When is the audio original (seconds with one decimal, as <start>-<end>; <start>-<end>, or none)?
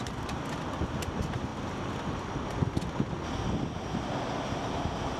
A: 0.0-5.2